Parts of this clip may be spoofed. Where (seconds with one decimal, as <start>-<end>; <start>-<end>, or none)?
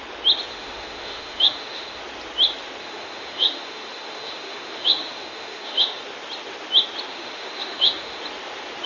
0.5-2.0; 2.8-6.0; 7.1-8.2